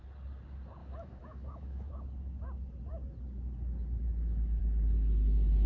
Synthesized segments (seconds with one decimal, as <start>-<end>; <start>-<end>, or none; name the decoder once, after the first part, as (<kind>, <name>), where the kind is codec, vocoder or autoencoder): 0.8-1.9 (autoencoder, DAC-VAE)